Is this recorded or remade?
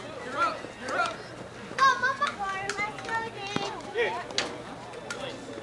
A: recorded